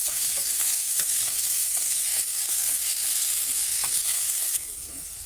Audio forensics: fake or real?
fake